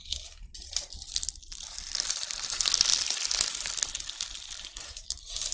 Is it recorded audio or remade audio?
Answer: recorded